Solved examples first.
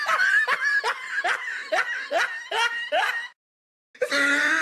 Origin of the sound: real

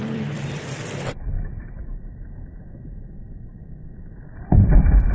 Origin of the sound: fake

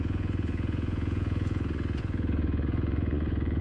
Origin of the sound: fake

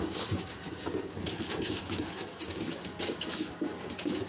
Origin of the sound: fake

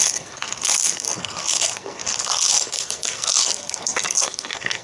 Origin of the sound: fake